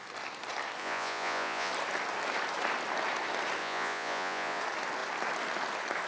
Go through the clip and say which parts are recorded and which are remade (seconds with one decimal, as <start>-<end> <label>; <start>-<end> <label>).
0.0-0.8 recorded; 0.8-1.7 remade; 1.7-3.6 recorded; 3.6-4.6 remade; 4.6-6.1 recorded